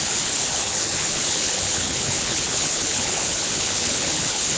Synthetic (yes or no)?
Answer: yes